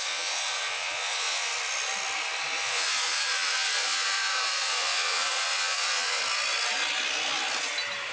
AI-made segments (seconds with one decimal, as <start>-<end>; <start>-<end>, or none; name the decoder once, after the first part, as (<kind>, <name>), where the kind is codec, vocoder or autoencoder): 0.0-1.5 (vocoder, Vocos); 2.6-6.2